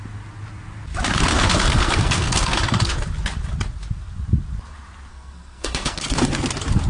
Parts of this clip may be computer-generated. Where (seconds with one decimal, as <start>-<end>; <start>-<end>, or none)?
1.3-2.9; 5.1-6.3